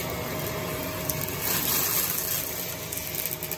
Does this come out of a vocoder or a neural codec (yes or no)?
no